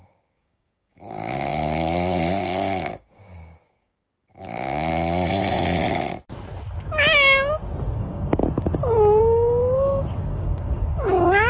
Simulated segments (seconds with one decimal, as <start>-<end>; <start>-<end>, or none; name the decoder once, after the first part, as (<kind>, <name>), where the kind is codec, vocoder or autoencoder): 0.0-4.9 (codec, DAC); 8.0-8.4; 9.2-11.5